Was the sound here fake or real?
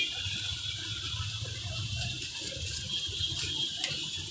real